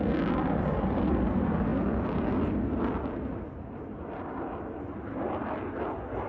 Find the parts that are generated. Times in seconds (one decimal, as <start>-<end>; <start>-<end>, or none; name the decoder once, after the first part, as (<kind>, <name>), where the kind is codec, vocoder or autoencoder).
none